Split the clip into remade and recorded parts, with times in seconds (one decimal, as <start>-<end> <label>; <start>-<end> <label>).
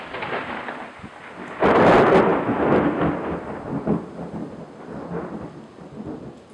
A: 0.0-6.5 recorded